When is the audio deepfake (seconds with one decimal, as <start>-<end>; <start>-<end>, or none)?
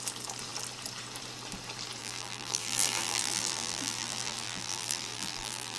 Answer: 2.0-5.8